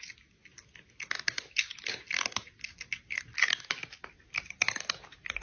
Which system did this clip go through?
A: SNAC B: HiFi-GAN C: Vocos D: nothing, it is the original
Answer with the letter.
D